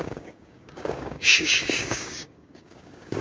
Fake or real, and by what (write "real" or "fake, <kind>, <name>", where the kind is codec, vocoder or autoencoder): fake, codec, DAC